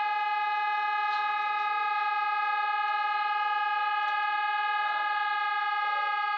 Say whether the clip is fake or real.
real